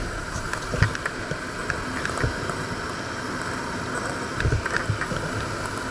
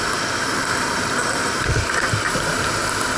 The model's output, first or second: second